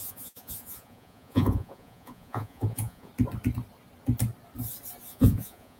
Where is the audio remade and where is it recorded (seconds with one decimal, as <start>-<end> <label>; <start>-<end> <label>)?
0.0-3.1 remade; 3.1-5.1 recorded; 5.1-5.8 remade